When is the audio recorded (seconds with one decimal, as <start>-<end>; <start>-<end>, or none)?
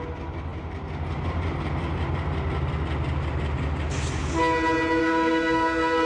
0.0-5.0